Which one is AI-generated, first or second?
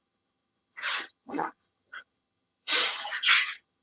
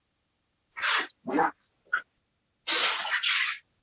first